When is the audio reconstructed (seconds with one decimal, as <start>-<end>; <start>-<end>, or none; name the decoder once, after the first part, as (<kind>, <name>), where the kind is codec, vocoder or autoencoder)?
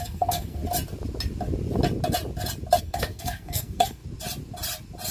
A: 0.0-0.6 (codec, SNAC); 2.8-4.0